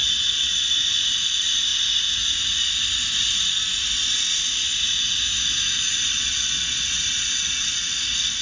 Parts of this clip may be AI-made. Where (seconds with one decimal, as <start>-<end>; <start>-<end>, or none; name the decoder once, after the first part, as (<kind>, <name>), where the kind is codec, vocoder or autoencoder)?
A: 0.0-0.5 (vocoder, Vocos); 5.9-7.7